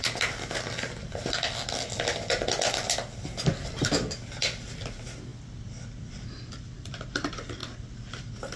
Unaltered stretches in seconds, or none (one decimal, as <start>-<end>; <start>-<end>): 0.0-8.6